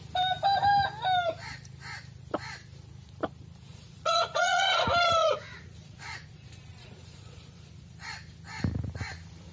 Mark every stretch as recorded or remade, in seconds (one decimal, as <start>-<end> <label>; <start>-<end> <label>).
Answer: 0.0-3.7 recorded; 3.7-4.8 remade; 4.8-5.2 recorded; 5.2-7.9 remade; 7.9-9.5 recorded